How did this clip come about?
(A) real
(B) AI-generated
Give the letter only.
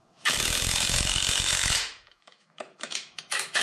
B